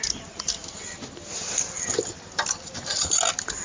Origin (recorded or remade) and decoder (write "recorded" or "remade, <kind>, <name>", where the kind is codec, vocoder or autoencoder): recorded